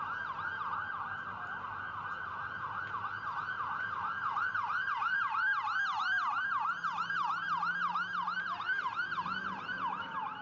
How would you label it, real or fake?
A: real